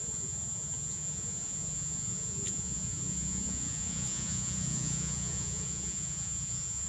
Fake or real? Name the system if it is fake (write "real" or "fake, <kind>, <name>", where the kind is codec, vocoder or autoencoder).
fake, vocoder, Vocos